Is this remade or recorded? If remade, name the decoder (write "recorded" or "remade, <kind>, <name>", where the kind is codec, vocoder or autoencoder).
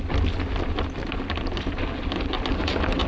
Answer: recorded